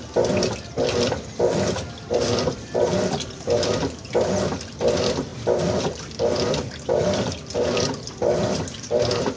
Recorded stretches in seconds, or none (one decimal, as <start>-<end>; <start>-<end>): none